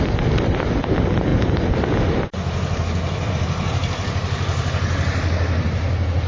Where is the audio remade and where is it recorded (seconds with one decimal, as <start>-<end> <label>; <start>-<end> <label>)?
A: 0.0-6.3 recorded